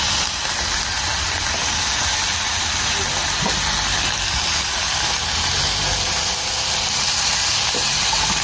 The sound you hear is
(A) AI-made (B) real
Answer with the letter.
B